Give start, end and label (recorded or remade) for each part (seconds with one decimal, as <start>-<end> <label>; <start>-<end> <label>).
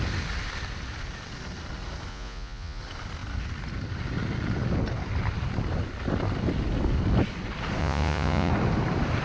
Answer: 0.0-2.1 recorded; 2.1-2.8 remade; 2.8-7.8 recorded; 7.8-8.5 remade; 8.5-9.2 recorded